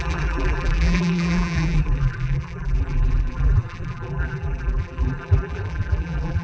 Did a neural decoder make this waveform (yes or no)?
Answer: yes